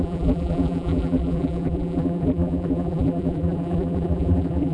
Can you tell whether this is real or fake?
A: fake